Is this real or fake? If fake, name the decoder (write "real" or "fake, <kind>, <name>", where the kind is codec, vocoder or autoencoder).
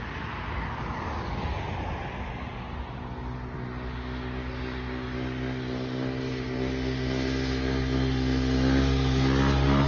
real